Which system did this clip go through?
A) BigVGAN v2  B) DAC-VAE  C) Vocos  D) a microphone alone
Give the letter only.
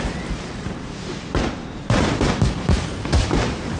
A